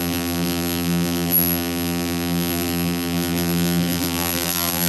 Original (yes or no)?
no